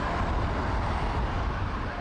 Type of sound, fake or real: real